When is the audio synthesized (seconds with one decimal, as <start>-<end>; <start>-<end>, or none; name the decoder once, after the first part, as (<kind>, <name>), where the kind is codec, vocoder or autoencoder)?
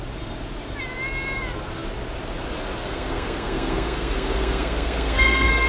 2.8-5.7 (codec, SNAC)